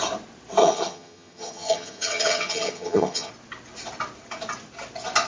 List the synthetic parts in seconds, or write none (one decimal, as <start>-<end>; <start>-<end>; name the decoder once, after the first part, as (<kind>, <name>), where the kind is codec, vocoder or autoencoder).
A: 0.6-3.3 (vocoder, HiFi-GAN)